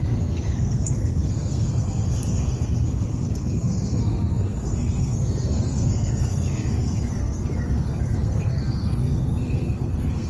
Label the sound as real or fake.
fake